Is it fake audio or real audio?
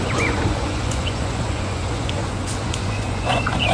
fake